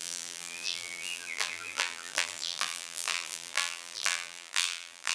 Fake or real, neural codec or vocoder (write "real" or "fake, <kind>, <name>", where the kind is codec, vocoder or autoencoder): fake, vocoder, BigVGAN v2